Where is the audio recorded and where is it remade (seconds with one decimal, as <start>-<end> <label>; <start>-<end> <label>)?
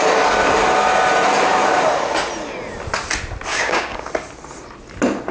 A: 0.0-3.5 recorded; 3.5-4.1 remade; 4.1-5.3 recorded